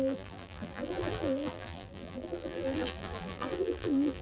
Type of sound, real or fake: fake